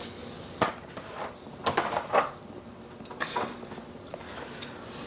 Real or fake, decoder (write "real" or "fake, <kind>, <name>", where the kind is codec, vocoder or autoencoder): real